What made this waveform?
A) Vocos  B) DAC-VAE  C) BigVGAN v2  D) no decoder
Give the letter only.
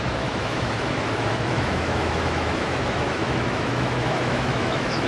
B